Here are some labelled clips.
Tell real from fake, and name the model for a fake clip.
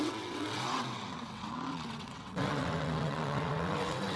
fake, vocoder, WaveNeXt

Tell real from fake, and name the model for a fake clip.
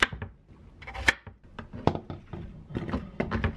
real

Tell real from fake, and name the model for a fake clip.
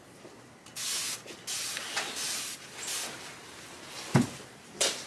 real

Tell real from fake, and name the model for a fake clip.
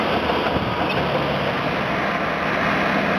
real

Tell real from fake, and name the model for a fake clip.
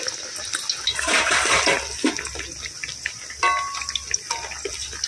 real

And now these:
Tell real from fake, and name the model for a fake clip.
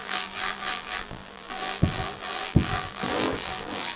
fake, vocoder, BigVGAN v2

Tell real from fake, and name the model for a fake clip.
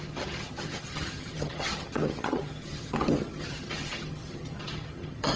fake, vocoder, HiFi-GAN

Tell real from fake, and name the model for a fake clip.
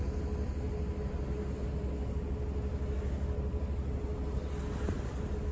real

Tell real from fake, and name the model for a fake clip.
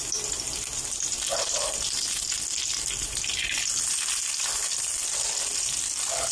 real